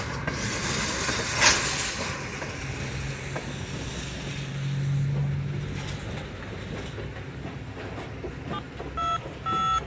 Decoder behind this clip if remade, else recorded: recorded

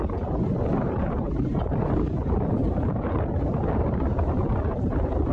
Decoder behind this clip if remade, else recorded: remade, vocoder, BigVGAN v2